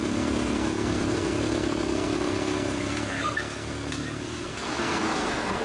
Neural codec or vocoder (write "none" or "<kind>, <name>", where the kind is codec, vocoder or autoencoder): codec, SNAC